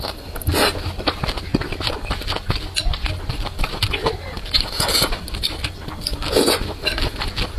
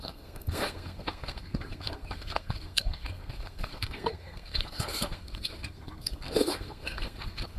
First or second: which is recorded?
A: first